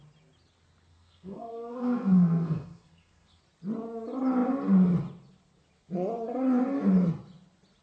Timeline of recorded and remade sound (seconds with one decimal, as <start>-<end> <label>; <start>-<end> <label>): 0.0-0.9 recorded; 0.9-3.4 remade; 3.4-7.8 recorded